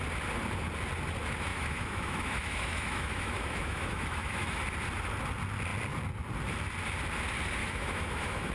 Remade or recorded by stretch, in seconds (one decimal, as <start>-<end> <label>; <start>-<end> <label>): 0.0-1.5 recorded; 1.5-4.6 remade; 4.6-7.6 recorded; 7.6-8.5 remade